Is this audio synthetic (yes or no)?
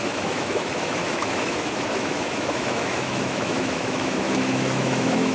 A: yes